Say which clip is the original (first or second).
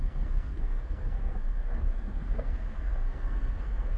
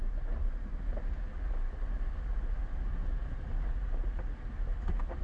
second